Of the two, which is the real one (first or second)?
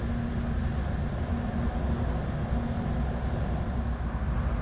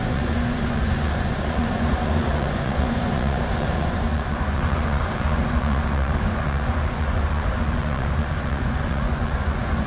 first